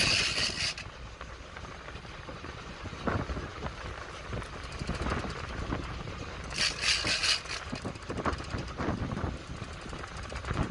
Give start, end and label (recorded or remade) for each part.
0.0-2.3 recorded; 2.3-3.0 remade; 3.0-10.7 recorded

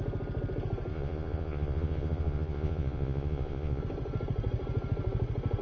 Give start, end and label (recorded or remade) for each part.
0.0-0.9 recorded; 0.9-3.8 remade; 3.8-5.6 recorded

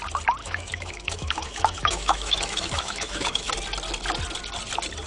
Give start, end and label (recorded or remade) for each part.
0.0-0.4 recorded; 0.4-3.5 remade; 3.5-5.1 recorded

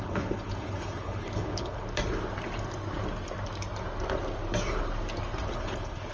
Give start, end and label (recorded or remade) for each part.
0.0-1.8 remade; 1.8-5.5 recorded; 5.5-6.1 remade

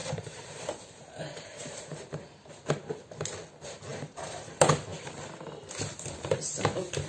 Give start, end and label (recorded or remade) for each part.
0.0-2.5 remade; 2.5-3.9 recorded; 3.9-4.5 remade; 4.5-7.1 recorded

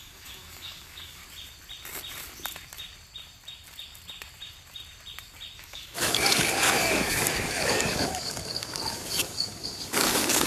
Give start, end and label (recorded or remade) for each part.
0.0-1.2 remade; 1.2-5.6 recorded; 5.6-10.5 remade